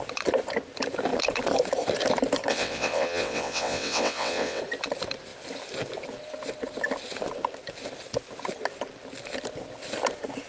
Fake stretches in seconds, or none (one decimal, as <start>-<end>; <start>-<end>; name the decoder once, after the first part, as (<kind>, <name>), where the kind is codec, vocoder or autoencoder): 2.5-4.6 (vocoder, WaveNeXt)